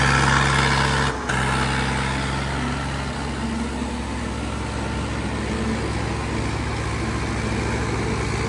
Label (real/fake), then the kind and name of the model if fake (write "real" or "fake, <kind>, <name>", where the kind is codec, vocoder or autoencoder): real